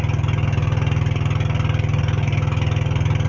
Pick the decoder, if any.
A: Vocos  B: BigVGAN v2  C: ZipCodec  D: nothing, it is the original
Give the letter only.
D